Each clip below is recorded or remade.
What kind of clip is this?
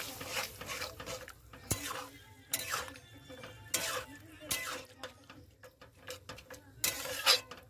recorded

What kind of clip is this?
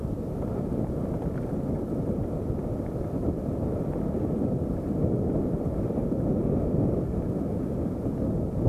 recorded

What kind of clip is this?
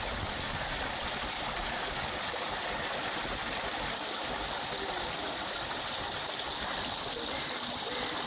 recorded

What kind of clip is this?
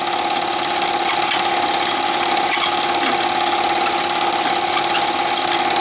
recorded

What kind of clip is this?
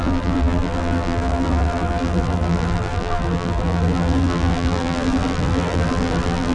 remade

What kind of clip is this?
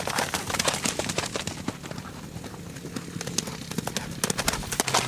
recorded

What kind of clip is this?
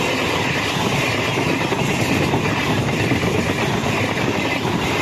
remade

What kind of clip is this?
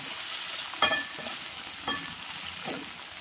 recorded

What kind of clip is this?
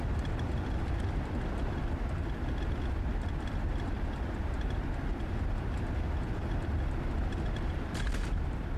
remade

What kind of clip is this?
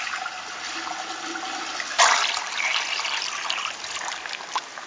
recorded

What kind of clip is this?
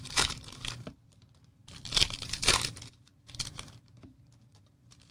remade